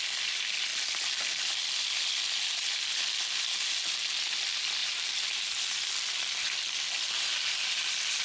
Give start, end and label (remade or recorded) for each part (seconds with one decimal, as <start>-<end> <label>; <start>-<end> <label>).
0.0-8.2 recorded